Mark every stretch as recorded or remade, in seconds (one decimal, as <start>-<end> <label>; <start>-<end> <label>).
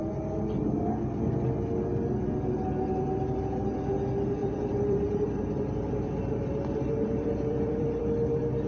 0.0-4.4 recorded; 4.4-8.0 remade; 8.0-8.7 recorded